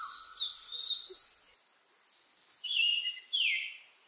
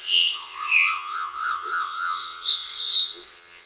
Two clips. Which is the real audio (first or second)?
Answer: first